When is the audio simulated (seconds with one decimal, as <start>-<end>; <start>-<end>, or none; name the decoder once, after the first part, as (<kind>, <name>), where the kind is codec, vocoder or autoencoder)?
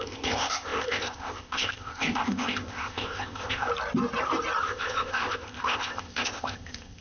0.0-3.7 (codec, ZipCodec); 4.6-7.0